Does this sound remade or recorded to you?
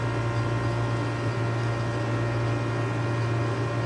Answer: recorded